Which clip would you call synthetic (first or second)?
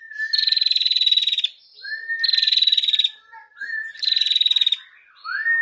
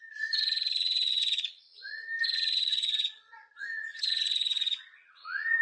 second